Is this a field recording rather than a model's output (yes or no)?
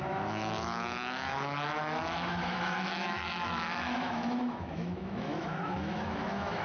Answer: no